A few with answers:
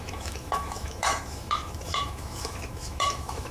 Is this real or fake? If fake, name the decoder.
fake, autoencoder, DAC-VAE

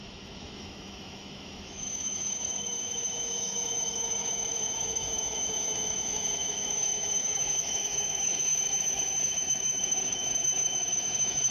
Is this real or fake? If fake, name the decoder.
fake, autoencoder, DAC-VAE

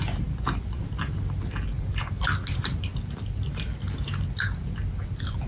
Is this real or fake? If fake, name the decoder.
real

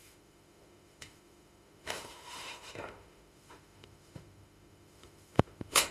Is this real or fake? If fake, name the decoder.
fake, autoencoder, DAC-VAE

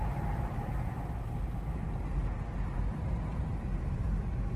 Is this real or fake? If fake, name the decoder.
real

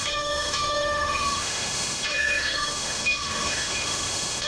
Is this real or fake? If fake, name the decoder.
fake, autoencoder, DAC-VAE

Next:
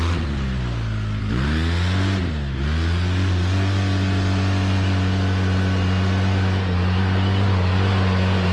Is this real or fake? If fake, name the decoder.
real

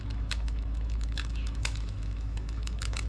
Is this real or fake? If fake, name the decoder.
fake, autoencoder, DAC-VAE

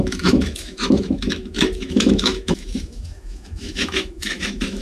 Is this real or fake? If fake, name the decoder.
fake, autoencoder, DAC-VAE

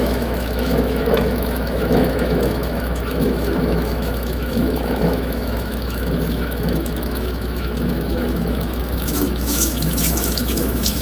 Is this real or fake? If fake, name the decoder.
fake, autoencoder, DAC-VAE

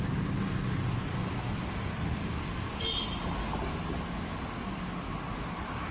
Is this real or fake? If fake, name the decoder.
real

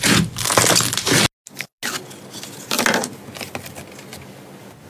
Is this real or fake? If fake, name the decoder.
real